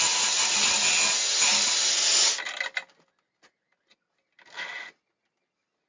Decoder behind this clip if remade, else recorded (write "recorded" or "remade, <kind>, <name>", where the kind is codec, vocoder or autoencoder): recorded